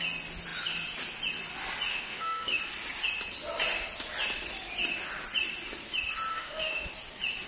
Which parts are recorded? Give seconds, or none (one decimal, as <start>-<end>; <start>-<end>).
0.0-1.9; 2.6-6.3; 6.9-7.5